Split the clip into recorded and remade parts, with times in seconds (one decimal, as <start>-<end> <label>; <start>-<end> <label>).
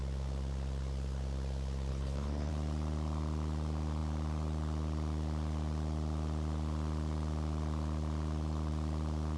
0.0-1.9 recorded; 1.9-2.5 remade; 2.5-9.4 recorded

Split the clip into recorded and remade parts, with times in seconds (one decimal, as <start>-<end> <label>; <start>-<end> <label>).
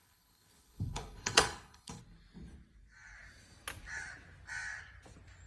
0.0-2.0 remade; 2.0-5.5 recorded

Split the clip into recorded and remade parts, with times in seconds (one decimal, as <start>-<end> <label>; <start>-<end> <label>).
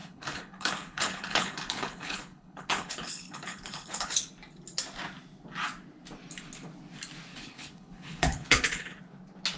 0.0-4.3 remade; 4.3-7.3 recorded; 7.3-9.0 remade; 9.0-9.6 recorded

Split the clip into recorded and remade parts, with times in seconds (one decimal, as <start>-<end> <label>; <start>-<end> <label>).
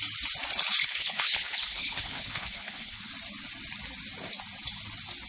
0.0-0.8 recorded; 0.8-3.1 remade; 3.1-5.3 recorded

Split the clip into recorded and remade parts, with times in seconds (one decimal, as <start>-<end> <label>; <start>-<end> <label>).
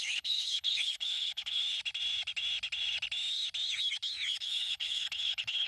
0.0-1.6 remade; 1.6-4.4 recorded; 4.4-5.7 remade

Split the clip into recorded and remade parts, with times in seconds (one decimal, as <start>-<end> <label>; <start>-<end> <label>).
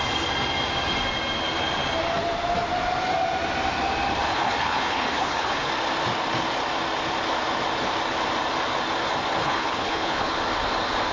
0.0-4.3 recorded; 4.3-5.7 remade; 5.7-9.4 recorded; 9.4-10.3 remade; 10.3-11.1 recorded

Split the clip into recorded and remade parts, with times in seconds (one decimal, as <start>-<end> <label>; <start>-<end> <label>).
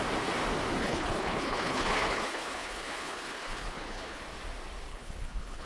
0.0-0.8 recorded; 0.8-4.2 remade; 4.2-4.9 recorded; 4.9-5.7 remade